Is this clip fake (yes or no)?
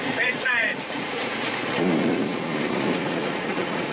yes